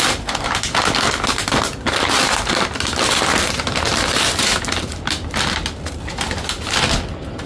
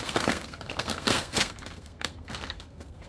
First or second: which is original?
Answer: first